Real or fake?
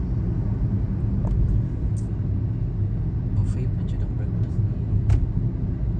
real